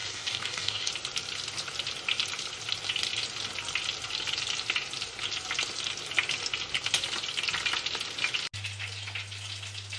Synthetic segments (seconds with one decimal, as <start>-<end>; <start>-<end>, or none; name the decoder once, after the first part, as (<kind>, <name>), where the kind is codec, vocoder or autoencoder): 0.0-0.9 (codec, DAC)